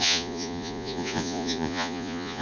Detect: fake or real fake